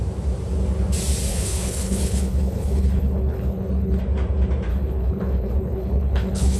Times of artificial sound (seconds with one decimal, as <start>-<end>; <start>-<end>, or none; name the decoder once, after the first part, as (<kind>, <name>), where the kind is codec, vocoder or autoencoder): 1.3-4.0 (codec, HILCodec); 4.7-6.6